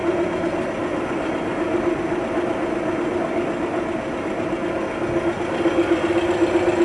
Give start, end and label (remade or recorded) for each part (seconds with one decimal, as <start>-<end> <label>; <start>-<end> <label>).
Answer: 0.0-6.8 recorded